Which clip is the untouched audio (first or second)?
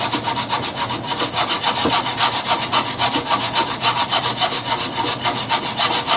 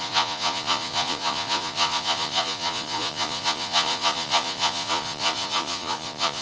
first